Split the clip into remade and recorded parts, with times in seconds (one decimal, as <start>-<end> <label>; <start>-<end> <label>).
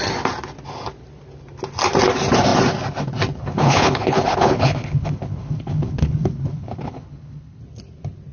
0.0-3.4 recorded; 3.4-7.6 remade; 7.6-8.3 recorded